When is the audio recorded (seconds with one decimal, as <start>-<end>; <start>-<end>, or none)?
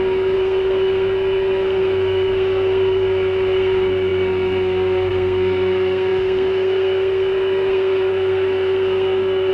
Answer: none